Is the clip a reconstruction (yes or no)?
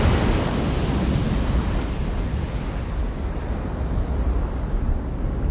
no